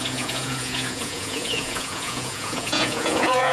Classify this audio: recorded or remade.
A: remade